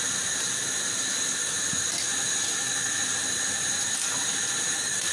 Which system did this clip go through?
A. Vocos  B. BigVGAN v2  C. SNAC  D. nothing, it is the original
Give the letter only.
D